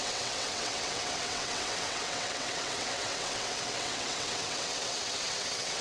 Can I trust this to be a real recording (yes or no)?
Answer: no